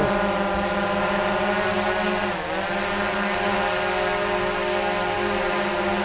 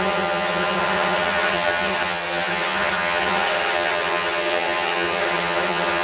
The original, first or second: first